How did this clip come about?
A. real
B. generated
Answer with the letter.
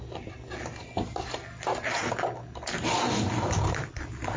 A